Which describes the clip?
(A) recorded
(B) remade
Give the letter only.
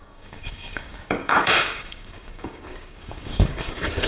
B